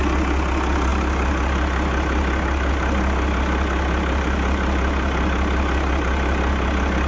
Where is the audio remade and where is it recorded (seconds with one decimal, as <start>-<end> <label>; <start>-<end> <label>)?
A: 0.0-7.1 recorded